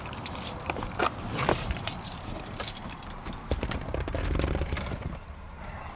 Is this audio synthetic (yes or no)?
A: yes